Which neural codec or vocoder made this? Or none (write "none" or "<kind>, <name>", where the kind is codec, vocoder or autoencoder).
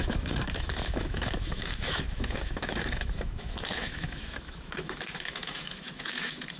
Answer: autoencoder, DAC-VAE